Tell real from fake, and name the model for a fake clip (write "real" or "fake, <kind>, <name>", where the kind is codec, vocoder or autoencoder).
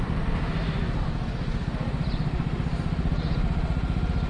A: real